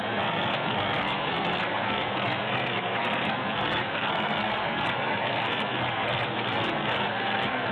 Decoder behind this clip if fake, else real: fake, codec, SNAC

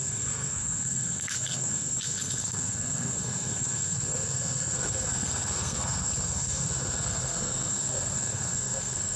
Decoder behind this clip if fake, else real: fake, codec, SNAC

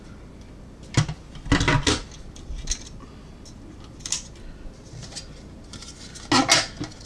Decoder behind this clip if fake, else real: real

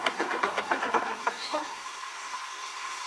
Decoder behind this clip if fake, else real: fake, codec, SNAC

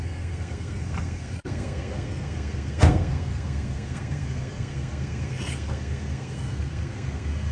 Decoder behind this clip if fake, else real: fake, codec, SNAC